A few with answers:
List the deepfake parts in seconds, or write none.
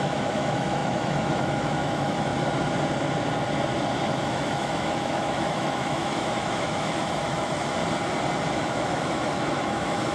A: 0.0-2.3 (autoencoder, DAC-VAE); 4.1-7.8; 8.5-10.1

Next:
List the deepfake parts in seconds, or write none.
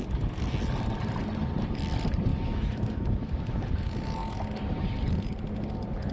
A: 2.3-3.7 (autoencoder, DAC-VAE)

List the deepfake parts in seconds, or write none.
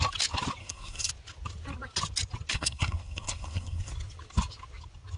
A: 0.6-1.1 (codec, SNAC); 2.5-3.9